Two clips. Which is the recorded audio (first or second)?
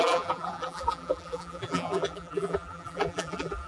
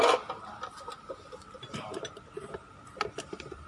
second